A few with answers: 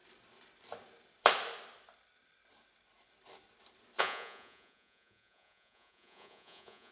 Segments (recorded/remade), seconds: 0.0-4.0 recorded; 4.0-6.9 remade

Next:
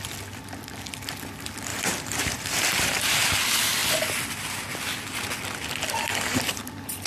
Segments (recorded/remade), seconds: 0.0-1.7 recorded; 1.7-2.5 remade; 2.5-7.1 recorded

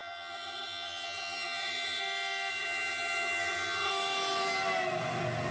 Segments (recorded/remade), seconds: 0.0-2.0 remade; 2.0-2.5 recorded; 2.5-3.9 remade; 3.9-5.5 recorded

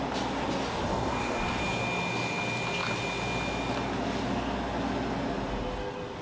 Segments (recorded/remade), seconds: 0.0-0.9 recorded; 0.9-1.6 remade; 1.6-6.2 recorded

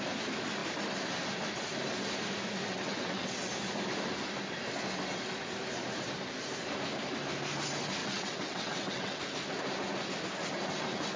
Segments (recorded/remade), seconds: 0.0-2.7 recorded; 2.7-3.5 remade; 3.5-8.0 recorded; 8.0-9.2 remade; 9.2-11.2 recorded

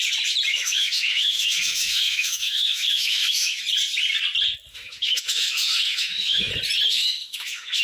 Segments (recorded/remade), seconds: 0.0-0.5 recorded; 0.5-3.6 remade; 3.6-4.7 recorded; 4.7-6.5 remade; 6.5-6.9 recorded; 6.9-7.8 remade